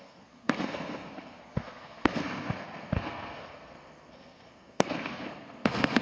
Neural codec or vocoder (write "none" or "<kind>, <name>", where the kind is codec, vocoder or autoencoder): codec, SNAC